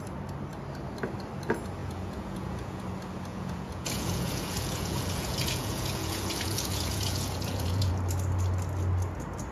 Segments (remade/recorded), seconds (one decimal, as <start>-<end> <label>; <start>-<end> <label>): 0.0-1.8 recorded; 1.8-2.8 remade; 2.8-3.3 recorded; 3.3-7.9 remade; 7.9-9.5 recorded